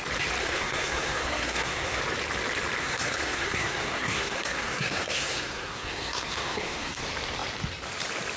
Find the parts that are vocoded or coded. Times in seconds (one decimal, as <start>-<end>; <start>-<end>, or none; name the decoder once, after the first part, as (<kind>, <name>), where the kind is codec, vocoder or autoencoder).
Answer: 0.4-2.0 (codec, SNAC); 2.8-7.0